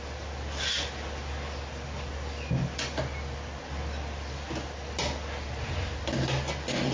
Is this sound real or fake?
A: real